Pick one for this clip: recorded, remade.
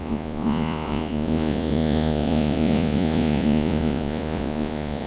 remade